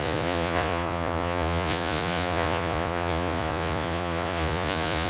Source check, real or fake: fake